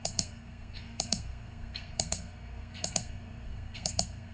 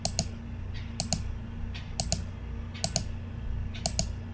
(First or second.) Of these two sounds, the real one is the second